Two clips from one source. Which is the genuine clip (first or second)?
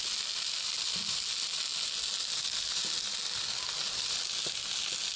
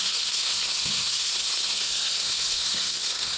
first